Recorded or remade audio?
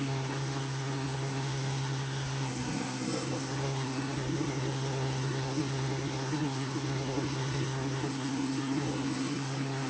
remade